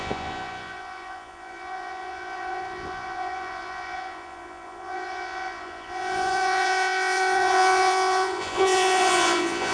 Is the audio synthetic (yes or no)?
yes